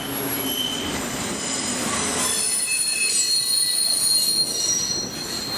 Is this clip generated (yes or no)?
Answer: no